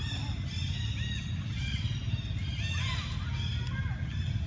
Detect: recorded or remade recorded